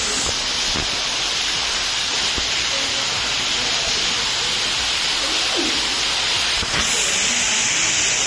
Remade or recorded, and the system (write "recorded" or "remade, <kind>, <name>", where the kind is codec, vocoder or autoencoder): recorded